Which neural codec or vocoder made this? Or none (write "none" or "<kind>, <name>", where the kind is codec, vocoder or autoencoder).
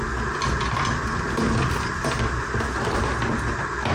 none